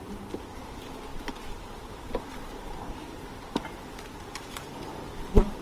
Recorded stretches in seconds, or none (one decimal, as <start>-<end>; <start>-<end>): none